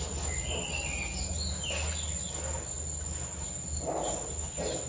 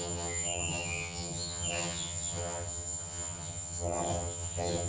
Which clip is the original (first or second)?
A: first